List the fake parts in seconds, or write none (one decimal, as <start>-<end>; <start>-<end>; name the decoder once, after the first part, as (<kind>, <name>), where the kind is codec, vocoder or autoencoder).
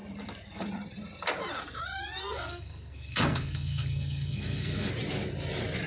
2.2-4.9 (codec, SNAC)